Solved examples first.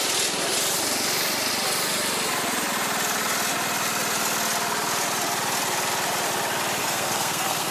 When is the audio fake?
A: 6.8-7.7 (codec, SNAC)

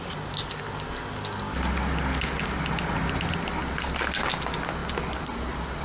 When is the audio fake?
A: none

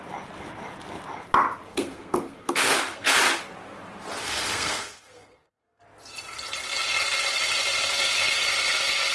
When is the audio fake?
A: 1.7-3.2 (codec, SNAC); 4.2-5.8